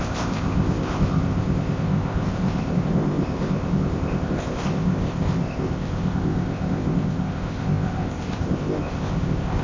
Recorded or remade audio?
remade